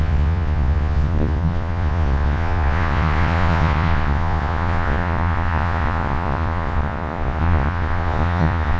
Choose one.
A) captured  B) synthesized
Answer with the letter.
B